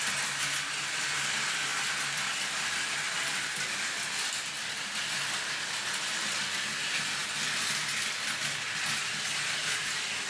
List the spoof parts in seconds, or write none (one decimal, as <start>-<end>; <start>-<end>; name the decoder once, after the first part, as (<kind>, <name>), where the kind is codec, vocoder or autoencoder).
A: none